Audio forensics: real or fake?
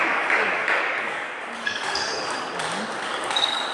fake